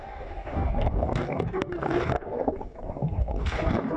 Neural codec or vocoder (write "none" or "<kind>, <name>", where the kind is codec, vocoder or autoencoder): codec, DAC